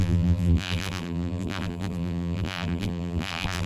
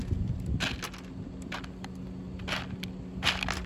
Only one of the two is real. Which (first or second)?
second